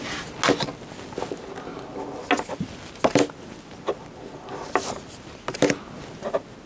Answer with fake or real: real